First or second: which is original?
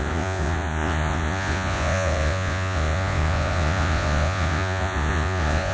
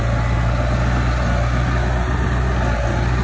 second